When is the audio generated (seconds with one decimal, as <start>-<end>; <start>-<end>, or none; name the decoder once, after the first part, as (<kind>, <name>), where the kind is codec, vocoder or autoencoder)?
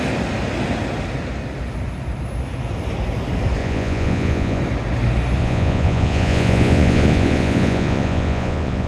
3.6-4.6 (vocoder, Vocos); 5.4-8.9